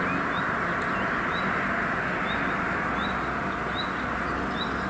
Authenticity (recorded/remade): recorded